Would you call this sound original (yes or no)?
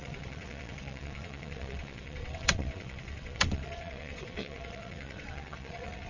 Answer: no